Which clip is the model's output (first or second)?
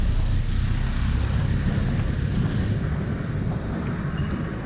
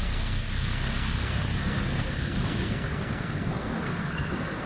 second